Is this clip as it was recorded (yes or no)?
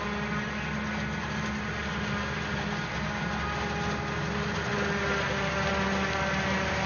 yes